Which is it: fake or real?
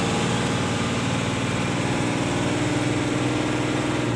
real